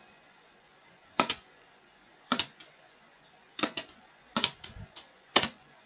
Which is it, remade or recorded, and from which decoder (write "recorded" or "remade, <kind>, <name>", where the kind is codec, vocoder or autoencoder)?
remade, vocoder, Vocos